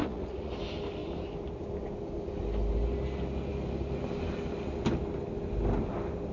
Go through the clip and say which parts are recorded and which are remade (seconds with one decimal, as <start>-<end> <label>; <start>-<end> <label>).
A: 0.0-0.5 remade; 0.5-6.3 recorded